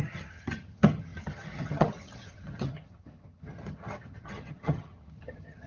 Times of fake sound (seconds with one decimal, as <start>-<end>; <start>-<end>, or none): 0.0-5.7